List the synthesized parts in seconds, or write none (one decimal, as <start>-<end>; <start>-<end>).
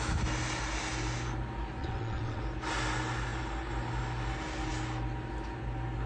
1.8-2.4